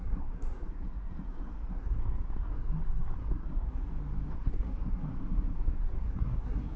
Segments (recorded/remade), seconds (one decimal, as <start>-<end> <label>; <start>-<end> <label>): 0.0-3.8 remade; 3.8-4.3 recorded; 4.3-6.8 remade